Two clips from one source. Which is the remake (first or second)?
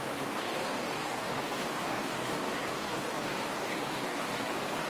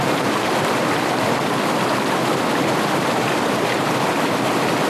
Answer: first